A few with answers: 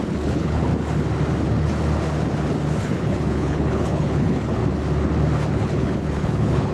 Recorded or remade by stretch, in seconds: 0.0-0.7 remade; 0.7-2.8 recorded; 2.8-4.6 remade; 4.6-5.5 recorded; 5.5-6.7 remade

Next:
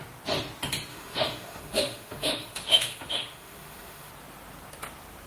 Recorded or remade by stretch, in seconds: 0.0-0.9 recorded; 0.9-4.1 remade; 4.1-5.3 recorded

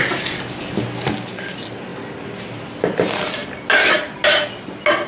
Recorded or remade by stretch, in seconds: 0.0-5.1 recorded

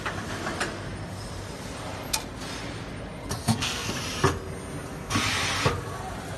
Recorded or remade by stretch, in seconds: 0.0-3.4 recorded; 3.4-3.9 remade; 3.9-6.4 recorded

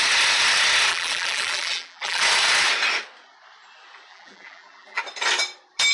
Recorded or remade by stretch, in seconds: 0.0-0.9 recorded; 0.9-2.2 remade; 2.2-4.1 recorded; 4.1-5.0 remade; 5.0-5.9 recorded

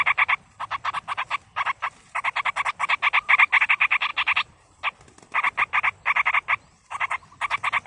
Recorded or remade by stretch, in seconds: 0.0-7.9 recorded

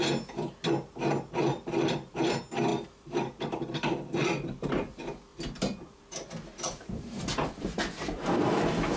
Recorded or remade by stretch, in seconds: 0.0-1.5 recorded; 1.5-2.1 remade; 2.1-2.7 recorded; 2.7-4.6 remade; 4.6-5.3 recorded; 5.3-6.1 remade; 6.1-9.0 recorded

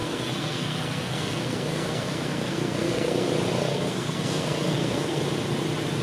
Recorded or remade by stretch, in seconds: 0.0-3.3 remade; 3.3-3.7 recorded; 3.7-5.2 remade; 5.2-6.0 recorded